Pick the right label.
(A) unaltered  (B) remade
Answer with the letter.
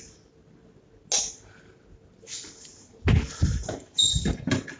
A